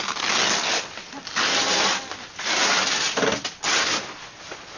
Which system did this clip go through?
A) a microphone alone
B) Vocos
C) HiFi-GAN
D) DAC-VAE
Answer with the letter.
A